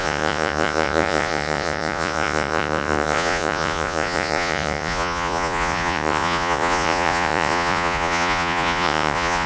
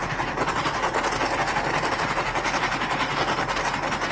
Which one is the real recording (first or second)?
second